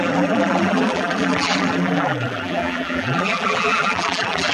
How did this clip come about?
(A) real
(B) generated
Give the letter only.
B